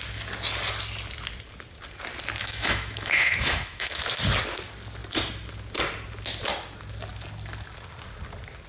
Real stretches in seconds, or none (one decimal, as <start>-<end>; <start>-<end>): 0.0-2.4; 4.0-8.7